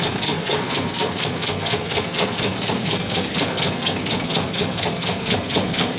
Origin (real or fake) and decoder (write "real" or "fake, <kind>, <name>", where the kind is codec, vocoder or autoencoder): fake, codec, SNAC